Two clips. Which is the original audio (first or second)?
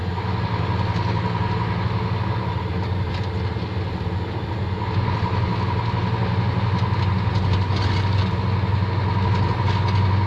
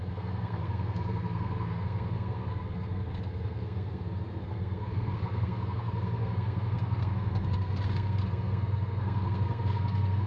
first